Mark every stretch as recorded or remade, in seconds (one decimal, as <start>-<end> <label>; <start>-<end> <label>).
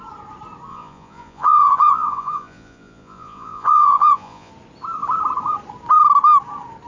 0.0-0.7 recorded; 0.7-4.5 remade; 4.5-6.9 recorded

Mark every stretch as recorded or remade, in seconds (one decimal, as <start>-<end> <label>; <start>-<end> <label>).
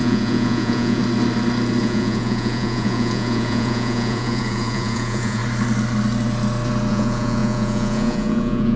0.0-1.0 remade; 1.0-1.8 recorded; 1.8-5.4 remade; 5.4-6.9 recorded; 6.9-8.8 remade